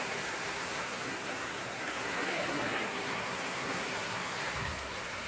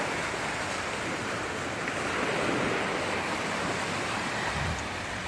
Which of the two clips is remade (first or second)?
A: first